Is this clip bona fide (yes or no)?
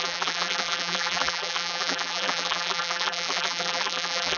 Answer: no